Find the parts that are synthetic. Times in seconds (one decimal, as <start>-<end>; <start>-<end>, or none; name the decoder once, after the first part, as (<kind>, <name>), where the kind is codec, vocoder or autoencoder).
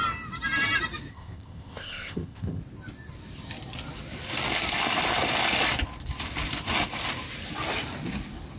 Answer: 1.1-2.6 (codec, ZipCodec)